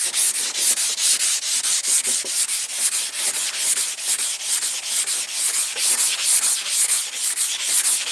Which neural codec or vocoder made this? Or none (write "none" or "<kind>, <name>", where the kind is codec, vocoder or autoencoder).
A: none